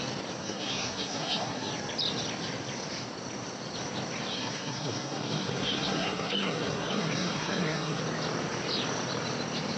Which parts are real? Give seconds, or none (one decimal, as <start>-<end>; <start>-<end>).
0.0-0.4; 1.7-4.3; 8.0-9.8